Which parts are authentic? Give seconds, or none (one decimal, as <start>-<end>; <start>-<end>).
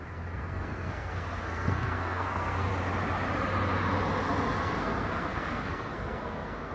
2.7-4.6